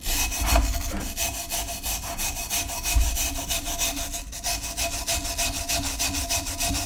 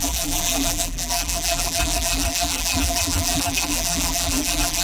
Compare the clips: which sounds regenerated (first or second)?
second